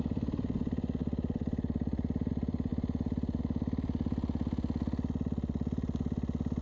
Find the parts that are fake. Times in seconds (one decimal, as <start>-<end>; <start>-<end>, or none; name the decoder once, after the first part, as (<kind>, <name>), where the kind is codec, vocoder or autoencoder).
1.0-2.3 (vocoder, BigVGAN v2); 2.7-3.4

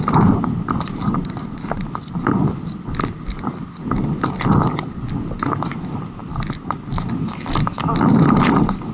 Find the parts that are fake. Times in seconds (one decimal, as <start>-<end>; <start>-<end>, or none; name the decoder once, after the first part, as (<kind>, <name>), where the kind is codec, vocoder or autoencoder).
none

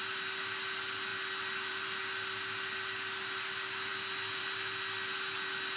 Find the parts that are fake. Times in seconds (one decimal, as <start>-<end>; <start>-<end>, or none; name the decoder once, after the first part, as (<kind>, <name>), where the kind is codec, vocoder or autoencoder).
none

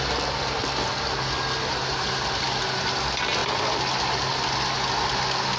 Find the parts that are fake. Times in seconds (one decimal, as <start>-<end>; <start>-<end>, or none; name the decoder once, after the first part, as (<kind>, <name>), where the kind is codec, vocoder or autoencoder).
none

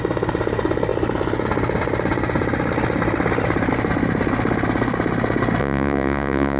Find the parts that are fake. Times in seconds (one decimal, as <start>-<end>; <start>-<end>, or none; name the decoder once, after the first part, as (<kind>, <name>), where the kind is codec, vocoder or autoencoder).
5.6-6.6 (vocoder, Vocos)

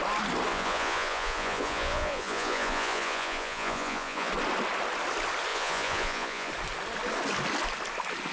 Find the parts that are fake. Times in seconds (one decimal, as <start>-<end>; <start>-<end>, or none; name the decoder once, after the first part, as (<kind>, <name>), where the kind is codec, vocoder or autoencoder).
0.5-4.3 (vocoder, Vocos); 5.5-6.5

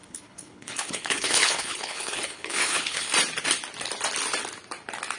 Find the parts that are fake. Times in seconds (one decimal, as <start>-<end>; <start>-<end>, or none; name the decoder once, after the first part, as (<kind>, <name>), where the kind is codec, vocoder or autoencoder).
0.0-3.1 (codec, HILCodec)

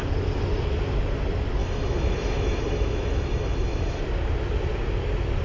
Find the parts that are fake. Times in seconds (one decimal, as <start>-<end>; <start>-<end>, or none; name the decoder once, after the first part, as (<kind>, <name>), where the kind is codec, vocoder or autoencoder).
1.6-4.0 (autoencoder, DAC-VAE)